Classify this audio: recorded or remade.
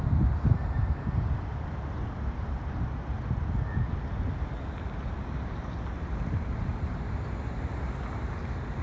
recorded